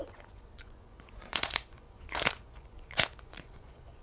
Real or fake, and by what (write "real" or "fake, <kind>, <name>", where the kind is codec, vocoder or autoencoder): fake, vocoder, Vocos